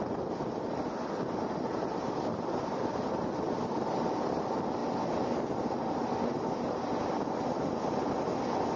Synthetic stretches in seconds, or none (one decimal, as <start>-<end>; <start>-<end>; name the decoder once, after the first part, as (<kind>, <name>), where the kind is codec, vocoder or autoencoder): none